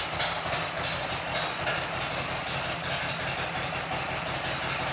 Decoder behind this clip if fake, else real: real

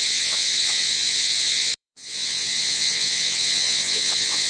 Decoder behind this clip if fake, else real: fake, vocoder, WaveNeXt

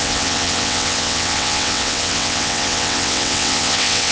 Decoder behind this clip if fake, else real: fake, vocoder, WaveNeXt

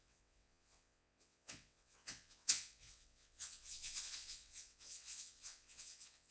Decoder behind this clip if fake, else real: fake, vocoder, WaveNeXt